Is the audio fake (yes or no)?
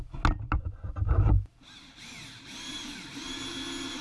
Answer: no